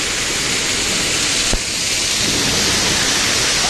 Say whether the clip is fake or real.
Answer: real